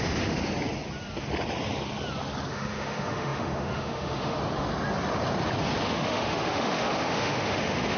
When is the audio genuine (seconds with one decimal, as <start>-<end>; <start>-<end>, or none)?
0.4-2.5; 4.4-5.8